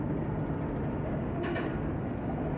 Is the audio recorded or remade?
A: recorded